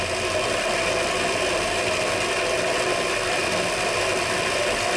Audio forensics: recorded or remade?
recorded